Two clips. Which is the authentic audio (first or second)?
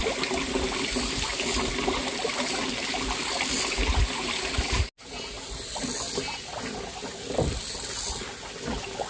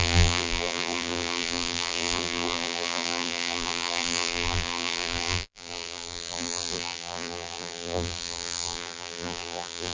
first